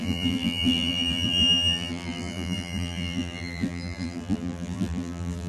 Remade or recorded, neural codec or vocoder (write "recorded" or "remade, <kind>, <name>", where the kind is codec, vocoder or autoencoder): remade, vocoder, BigVGAN v2